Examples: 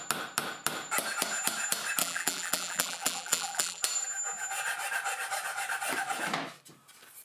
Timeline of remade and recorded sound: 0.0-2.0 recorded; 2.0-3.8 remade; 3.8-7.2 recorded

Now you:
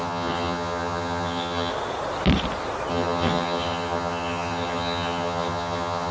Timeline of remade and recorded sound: 0.0-1.7 remade; 1.7-2.9 recorded; 2.9-6.1 remade

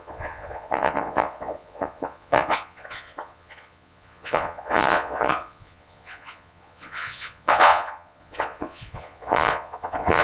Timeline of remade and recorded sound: 0.0-10.2 remade

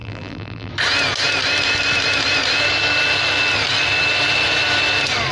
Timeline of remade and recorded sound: 0.0-0.7 remade; 0.7-5.3 recorded

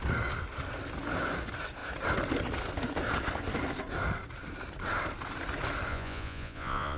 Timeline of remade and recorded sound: 0.0-5.9 recorded; 5.9-7.0 remade

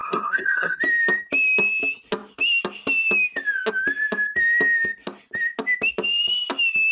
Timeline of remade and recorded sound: 0.0-0.8 remade; 0.8-6.9 recorded

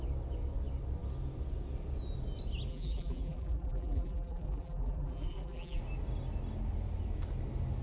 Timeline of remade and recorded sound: 0.0-2.7 recorded; 2.7-5.8 remade; 5.8-7.8 recorded